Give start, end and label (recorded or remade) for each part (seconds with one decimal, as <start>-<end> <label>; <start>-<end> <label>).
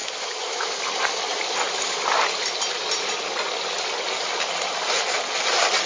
0.0-0.7 remade; 0.7-5.9 recorded